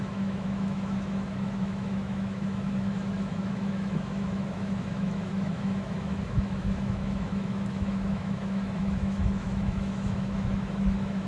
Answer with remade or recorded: remade